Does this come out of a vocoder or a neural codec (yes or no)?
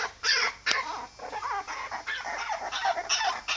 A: no